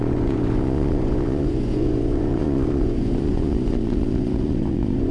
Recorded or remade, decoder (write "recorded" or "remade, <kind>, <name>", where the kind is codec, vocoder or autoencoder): remade, vocoder, Vocos